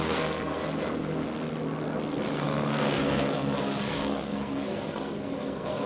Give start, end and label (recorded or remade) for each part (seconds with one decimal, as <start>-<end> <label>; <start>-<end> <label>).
0.0-0.6 remade; 0.6-2.3 recorded; 2.3-5.9 remade

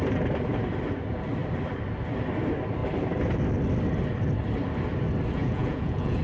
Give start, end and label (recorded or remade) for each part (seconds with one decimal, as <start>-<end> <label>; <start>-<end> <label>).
0.0-5.4 recorded; 5.4-6.2 remade